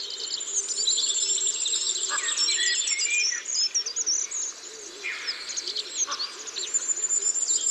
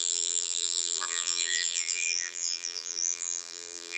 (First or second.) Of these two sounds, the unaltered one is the first